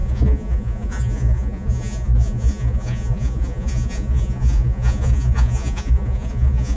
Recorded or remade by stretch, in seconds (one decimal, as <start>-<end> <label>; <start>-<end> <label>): 0.0-6.8 remade